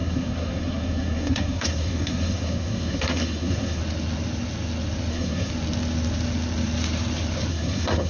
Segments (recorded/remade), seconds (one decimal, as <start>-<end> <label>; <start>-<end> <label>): 0.0-3.8 remade; 3.8-5.1 recorded; 5.1-5.5 remade; 5.5-7.5 recorded; 7.5-8.1 remade